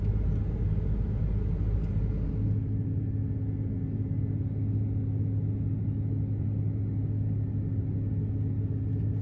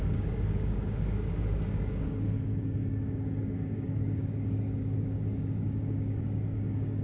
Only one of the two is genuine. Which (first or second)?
first